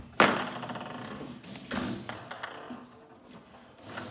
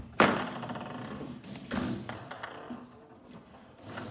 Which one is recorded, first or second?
first